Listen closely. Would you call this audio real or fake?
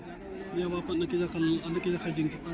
real